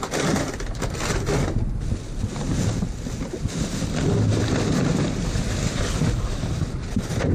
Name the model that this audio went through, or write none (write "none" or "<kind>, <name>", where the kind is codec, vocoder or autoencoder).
none